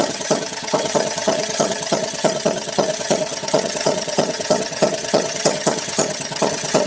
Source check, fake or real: fake